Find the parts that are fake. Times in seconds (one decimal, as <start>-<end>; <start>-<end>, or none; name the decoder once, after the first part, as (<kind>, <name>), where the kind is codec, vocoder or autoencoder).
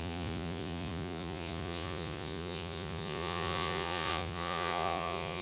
0.0-5.4 (vocoder, Vocos)